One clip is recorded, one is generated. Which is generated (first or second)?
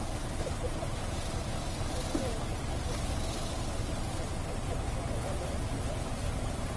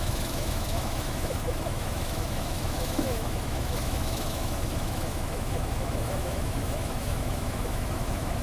second